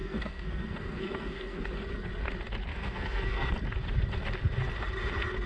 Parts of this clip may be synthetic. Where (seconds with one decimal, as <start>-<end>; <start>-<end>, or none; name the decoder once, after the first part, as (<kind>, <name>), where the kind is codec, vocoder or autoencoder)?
0.0-1.7 (codec, SNAC); 2.7-3.5